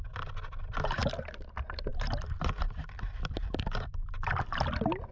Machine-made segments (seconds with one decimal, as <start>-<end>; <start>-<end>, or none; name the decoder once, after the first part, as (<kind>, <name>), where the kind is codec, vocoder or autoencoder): none